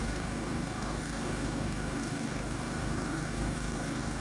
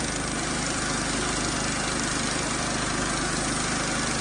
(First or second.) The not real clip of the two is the first